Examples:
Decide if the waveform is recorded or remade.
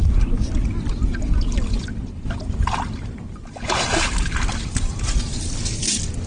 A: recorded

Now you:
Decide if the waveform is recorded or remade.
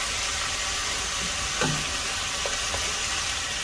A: recorded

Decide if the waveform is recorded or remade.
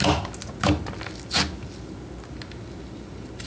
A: recorded